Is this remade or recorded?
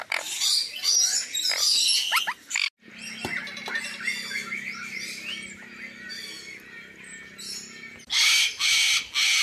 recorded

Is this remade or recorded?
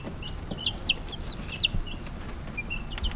recorded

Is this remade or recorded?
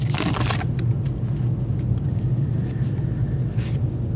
recorded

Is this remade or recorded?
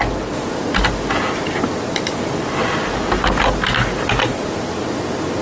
recorded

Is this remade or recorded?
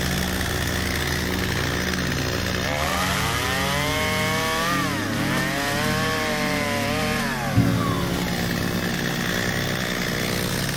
recorded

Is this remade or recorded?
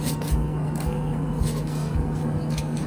remade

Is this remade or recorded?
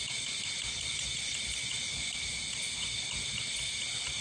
recorded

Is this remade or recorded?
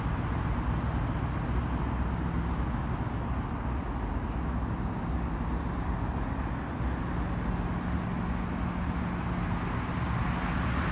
recorded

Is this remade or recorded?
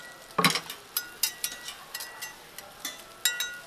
recorded